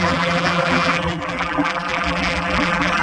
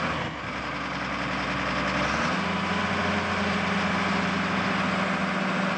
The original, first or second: second